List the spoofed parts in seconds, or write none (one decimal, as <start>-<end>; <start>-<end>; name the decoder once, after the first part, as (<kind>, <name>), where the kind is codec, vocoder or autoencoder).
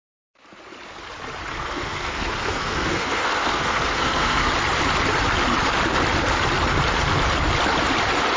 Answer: 1.5-4.5 (codec, SNAC)